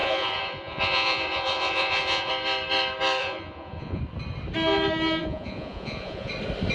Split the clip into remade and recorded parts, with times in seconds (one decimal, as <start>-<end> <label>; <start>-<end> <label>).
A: 0.0-2.3 remade; 2.3-3.2 recorded; 3.2-4.0 remade; 4.0-5.2 recorded; 5.2-6.3 remade; 6.3-6.7 recorded